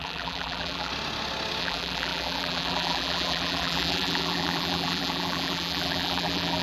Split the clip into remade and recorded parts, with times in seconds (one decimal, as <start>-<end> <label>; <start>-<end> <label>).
0.0-0.9 remade; 0.9-1.6 recorded; 1.6-6.6 remade